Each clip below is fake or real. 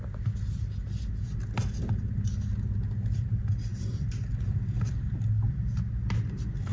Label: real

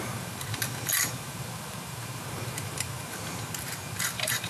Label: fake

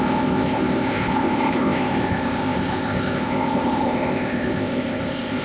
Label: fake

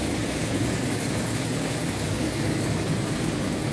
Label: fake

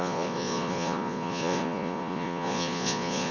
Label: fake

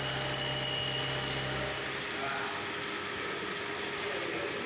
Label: real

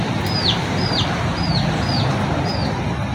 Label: real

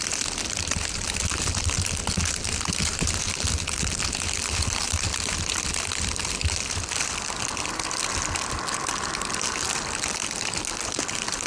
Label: real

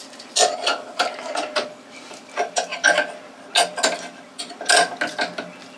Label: real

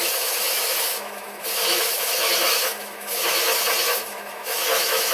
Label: fake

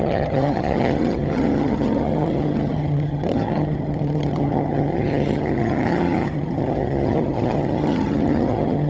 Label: fake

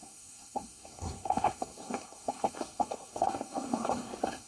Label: fake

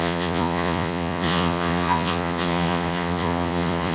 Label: fake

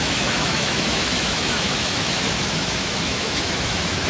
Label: fake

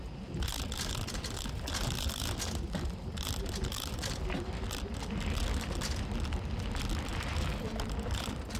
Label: real